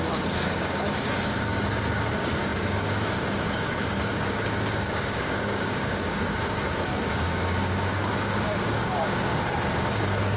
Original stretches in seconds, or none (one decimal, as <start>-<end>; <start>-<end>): 9.3-9.9